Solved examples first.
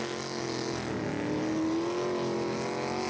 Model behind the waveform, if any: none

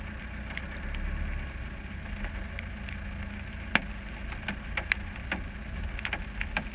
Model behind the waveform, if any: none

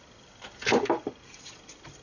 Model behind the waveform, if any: none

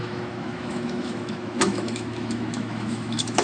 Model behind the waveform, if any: autoencoder, DAC-VAE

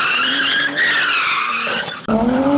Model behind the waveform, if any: vocoder, BigVGAN v2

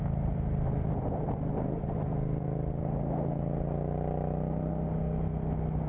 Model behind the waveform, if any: none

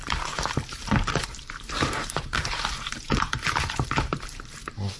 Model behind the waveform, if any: vocoder, BigVGAN v2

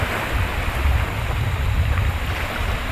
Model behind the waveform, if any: none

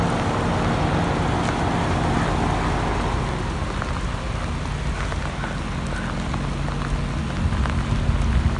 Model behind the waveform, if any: none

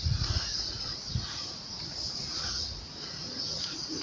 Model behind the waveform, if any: vocoder, Vocos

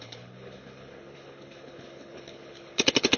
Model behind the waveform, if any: codec, HILCodec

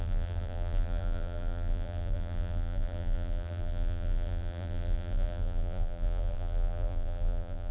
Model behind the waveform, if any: vocoder, BigVGAN v2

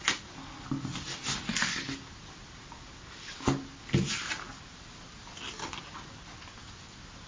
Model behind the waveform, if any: none